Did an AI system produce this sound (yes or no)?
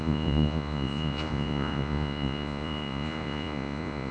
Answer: yes